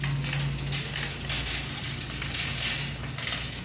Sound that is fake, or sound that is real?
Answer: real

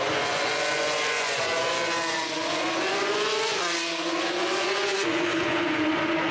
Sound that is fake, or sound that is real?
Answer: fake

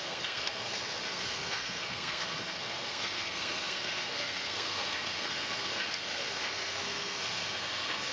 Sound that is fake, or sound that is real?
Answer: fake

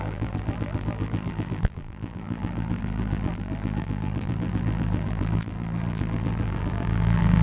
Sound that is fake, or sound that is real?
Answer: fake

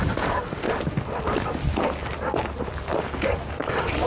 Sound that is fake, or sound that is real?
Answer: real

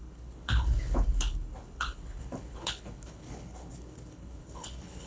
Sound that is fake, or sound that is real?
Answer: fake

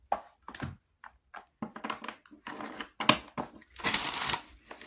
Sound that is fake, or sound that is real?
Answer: real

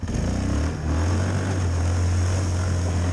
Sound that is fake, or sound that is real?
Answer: real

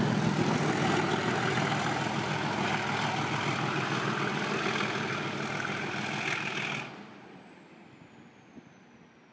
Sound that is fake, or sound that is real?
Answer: real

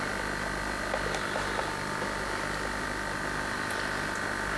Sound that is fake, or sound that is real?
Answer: real